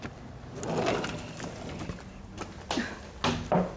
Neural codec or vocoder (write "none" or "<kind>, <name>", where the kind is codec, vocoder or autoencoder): none